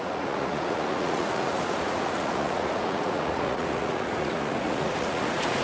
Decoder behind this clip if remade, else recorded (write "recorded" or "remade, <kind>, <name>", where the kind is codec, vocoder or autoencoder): remade, vocoder, Vocos